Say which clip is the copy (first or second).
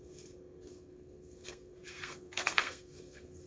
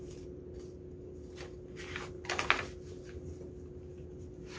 first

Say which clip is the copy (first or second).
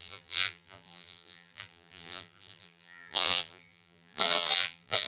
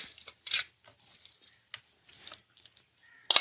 first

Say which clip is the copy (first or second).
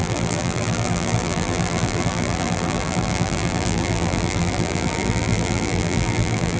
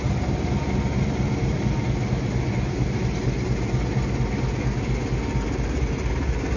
first